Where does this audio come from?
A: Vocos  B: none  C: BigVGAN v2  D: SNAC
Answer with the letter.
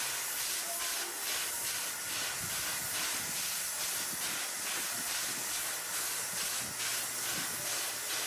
B